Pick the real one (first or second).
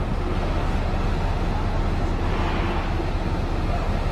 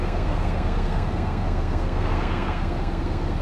first